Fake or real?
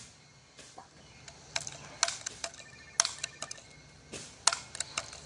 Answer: real